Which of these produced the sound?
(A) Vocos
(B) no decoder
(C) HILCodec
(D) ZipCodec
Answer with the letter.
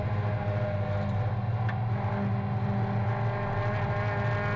B